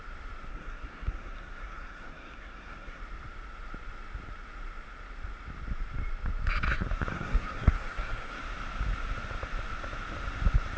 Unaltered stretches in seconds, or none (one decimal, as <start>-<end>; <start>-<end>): 0.0-0.5; 3.0-7.1; 8.4-10.8